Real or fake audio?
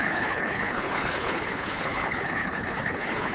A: fake